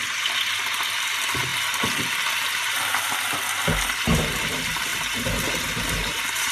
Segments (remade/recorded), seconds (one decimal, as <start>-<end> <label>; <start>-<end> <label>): 0.0-6.5 recorded